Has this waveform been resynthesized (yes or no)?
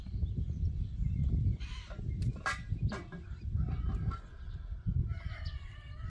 yes